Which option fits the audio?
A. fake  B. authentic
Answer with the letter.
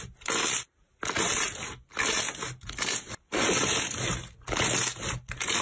B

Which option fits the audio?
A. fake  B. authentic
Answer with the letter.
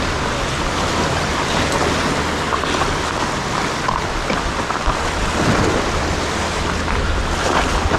B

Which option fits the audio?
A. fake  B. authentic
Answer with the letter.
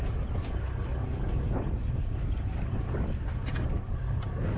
B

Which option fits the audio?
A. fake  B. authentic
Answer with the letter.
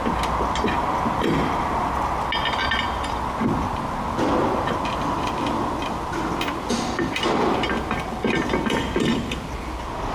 B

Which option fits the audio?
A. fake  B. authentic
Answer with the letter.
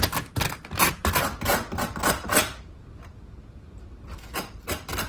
B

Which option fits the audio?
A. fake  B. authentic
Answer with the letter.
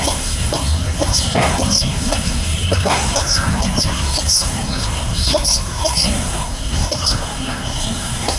A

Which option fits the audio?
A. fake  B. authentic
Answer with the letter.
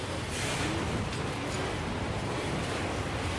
B